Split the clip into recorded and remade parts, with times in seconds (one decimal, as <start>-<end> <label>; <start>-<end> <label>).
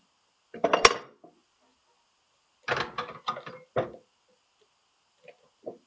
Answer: 0.0-5.9 recorded